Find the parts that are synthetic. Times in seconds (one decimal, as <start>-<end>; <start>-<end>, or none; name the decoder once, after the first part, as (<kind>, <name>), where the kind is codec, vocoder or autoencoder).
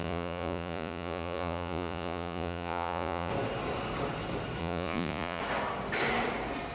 0.0-3.3 (vocoder, Vocos); 4.6-5.4